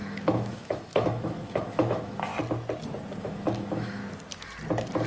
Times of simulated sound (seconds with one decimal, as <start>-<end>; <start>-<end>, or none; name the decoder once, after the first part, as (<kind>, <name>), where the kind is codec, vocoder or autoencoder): 0.0-2.3 (autoencoder, DAC-VAE); 3.2-4.0